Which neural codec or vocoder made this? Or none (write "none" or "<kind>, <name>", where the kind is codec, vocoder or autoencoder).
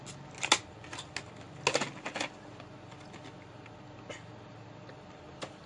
none